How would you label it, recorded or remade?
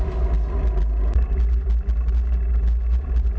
recorded